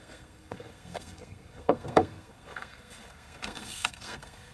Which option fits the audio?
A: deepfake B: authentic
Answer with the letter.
A